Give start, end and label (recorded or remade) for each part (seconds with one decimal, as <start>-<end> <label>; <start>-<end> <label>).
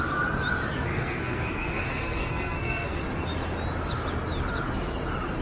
0.0-0.9 recorded; 0.9-3.0 remade; 3.0-5.4 recorded